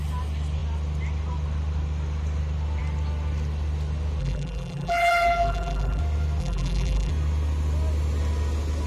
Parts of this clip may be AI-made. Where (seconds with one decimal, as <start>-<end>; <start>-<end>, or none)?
4.2-6.0; 6.4-7.1